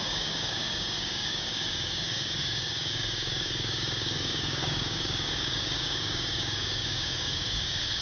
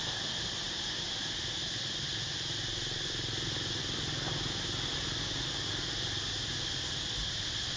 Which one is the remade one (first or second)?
first